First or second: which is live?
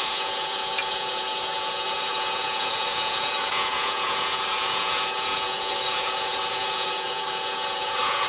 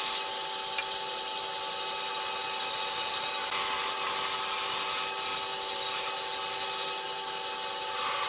second